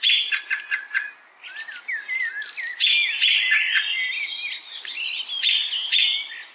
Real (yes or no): yes